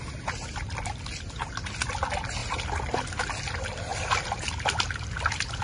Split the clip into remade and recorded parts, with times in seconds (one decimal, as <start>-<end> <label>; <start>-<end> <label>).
0.0-2.4 recorded; 2.4-3.2 remade; 3.2-3.9 recorded; 3.9-4.8 remade; 4.8-5.6 recorded